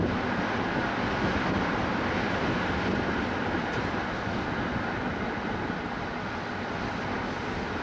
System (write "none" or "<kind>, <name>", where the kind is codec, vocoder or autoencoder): none